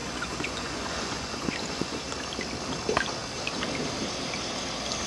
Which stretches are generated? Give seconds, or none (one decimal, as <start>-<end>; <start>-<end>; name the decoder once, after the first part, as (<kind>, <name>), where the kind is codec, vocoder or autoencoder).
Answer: 0.0-2.0 (vocoder, Vocos)